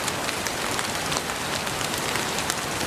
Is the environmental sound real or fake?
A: fake